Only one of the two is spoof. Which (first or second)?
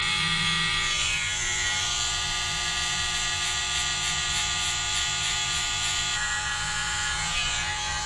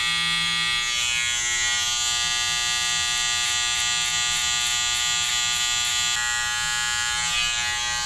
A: first